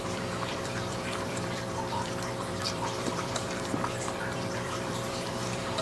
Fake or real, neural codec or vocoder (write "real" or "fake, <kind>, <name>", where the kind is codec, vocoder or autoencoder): fake, vocoder, BigVGAN v2